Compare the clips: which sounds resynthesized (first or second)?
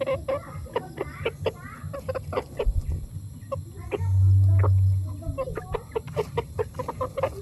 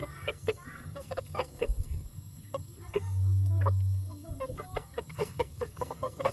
second